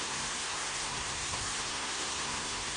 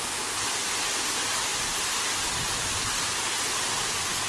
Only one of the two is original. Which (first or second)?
second